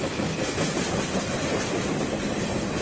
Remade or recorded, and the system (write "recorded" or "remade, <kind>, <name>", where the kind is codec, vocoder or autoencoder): recorded